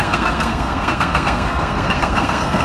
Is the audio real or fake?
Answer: fake